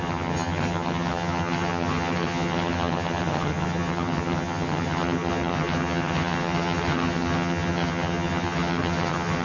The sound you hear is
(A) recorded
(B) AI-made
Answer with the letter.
B